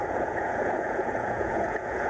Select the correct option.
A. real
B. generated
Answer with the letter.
B